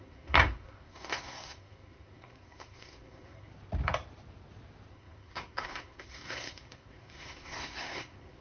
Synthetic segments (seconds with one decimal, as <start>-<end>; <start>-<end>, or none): 0.0-3.5; 4.9-8.4